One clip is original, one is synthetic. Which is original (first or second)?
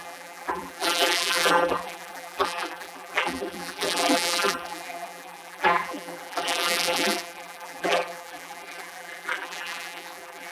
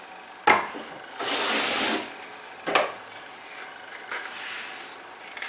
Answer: second